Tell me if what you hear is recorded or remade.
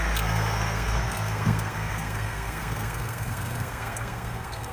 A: remade